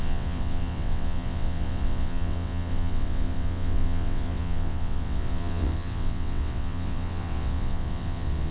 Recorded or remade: remade